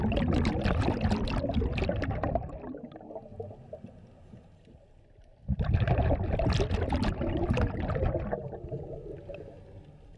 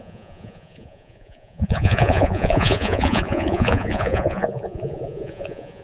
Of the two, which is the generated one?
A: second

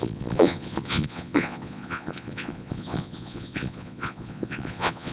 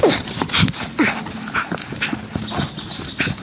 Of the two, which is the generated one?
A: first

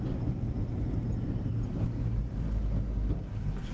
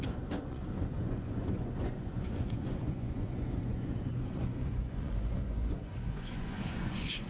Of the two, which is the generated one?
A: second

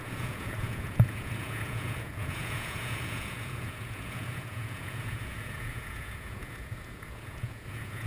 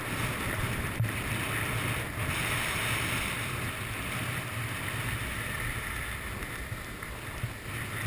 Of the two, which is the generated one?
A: first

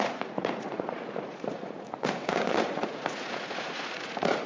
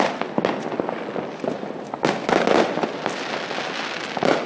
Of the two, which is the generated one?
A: first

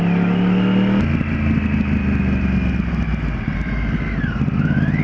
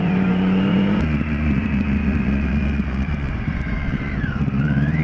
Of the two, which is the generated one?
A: second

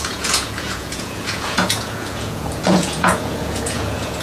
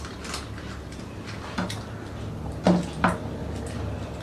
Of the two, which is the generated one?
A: first